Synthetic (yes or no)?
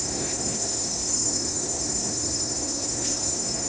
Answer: yes